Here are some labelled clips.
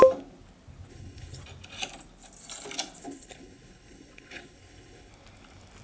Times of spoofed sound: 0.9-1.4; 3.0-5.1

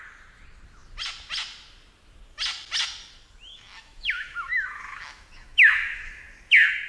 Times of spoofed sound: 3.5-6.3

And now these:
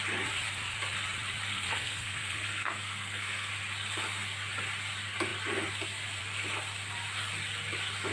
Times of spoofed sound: 1.5-3.5

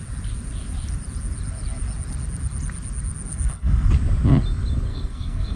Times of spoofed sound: 3.3-3.9; 4.9-5.6